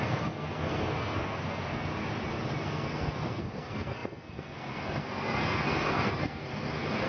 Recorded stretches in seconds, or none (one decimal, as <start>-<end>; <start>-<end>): 1.9-2.6